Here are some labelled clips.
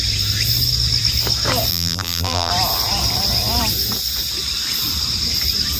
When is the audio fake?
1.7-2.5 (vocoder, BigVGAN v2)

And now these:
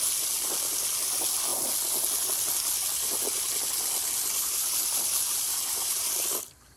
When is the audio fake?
4.4-6.1 (vocoder, BigVGAN v2)

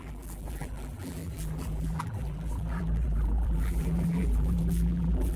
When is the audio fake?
0.0-5.4 (vocoder, BigVGAN v2)

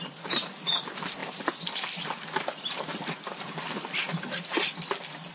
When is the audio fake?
1.2-4.2 (vocoder, BigVGAN v2)

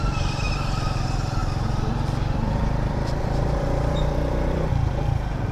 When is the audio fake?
1.4-4.7 (vocoder, BigVGAN v2)

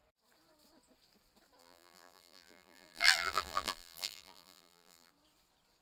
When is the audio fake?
1.6-5.1 (vocoder, BigVGAN v2)

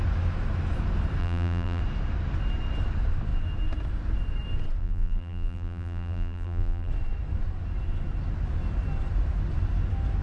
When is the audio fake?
1.2-1.8 (vocoder, BigVGAN v2); 4.8-6.9

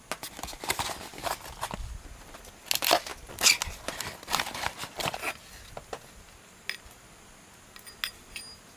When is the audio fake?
none